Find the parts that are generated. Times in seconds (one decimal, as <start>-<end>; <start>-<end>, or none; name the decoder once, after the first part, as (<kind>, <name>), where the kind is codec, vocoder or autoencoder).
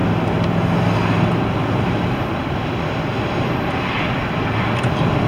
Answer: none